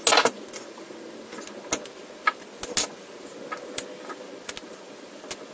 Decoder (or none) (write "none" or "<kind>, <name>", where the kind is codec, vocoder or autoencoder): none